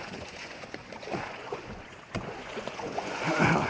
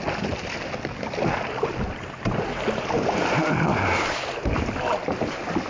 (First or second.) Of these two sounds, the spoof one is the first